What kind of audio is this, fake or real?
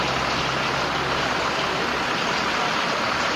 real